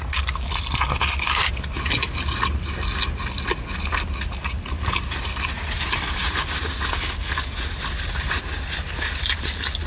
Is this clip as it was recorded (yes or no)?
yes